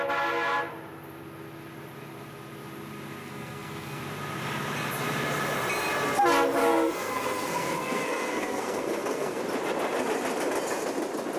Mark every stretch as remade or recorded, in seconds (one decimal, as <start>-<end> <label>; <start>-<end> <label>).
0.0-3.2 recorded; 3.2-4.0 remade; 4.0-6.6 recorded; 6.6-9.4 remade; 9.4-11.4 recorded